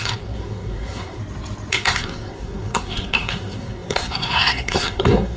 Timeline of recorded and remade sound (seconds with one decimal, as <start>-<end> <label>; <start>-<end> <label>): 0.0-1.2 remade; 1.2-1.7 recorded; 1.7-5.4 remade